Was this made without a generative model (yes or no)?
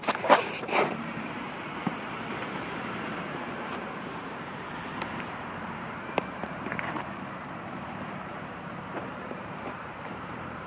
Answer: no